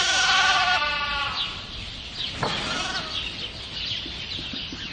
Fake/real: real